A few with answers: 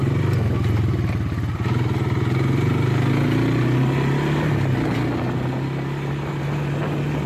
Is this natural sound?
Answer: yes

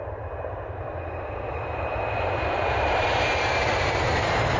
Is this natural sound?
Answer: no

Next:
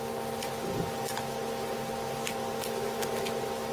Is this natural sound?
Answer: yes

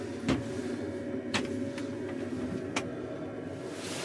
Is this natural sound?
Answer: yes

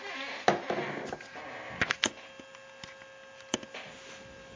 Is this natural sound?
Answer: yes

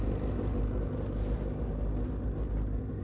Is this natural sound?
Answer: yes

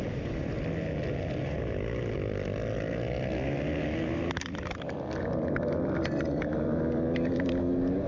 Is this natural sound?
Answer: yes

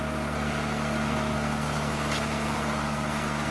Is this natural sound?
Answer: no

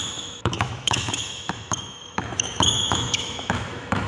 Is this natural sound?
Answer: no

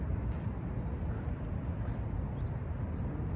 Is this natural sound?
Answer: yes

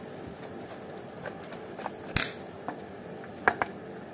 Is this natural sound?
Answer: yes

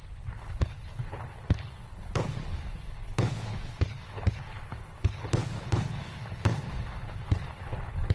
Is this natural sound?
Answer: no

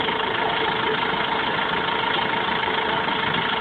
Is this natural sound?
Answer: yes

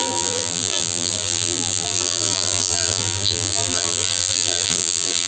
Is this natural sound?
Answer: no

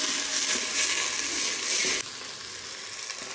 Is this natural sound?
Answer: yes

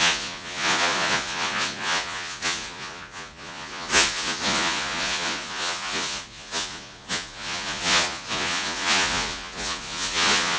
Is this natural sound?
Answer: no